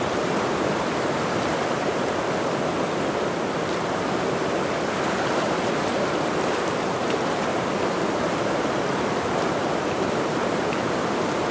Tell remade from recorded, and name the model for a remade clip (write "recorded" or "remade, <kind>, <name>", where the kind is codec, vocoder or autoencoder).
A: remade, vocoder, BigVGAN v2